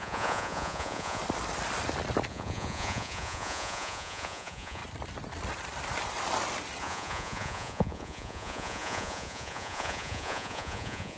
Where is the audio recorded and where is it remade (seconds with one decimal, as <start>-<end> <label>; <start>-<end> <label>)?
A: 0.0-1.2 remade; 1.2-2.3 recorded; 2.3-4.8 remade; 4.8-6.8 recorded; 6.8-11.2 remade